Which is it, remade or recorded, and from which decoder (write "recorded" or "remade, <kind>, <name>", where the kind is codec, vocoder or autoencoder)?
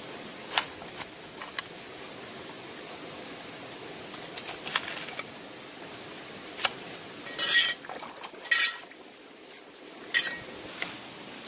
recorded